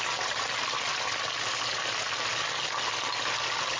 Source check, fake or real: real